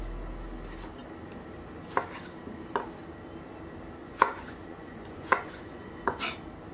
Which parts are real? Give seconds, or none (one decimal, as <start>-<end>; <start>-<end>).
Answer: 0.0-4.0; 6.2-6.7